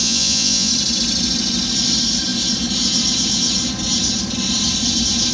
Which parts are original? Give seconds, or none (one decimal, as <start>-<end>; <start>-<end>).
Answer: 0.7-5.3